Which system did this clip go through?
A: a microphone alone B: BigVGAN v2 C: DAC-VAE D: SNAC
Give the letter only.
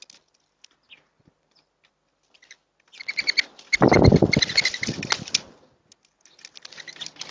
A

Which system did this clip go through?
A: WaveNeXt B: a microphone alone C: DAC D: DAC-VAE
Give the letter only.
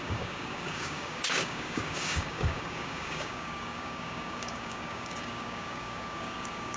C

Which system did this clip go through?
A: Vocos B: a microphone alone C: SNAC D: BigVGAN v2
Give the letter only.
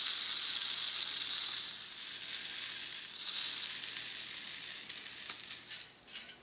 B